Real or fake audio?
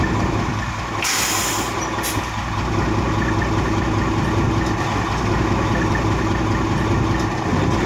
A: real